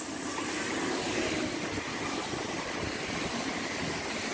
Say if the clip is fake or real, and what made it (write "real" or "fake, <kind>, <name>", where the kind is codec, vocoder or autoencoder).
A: real